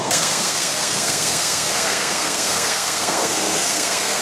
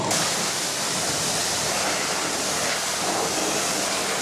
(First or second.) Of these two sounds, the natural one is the second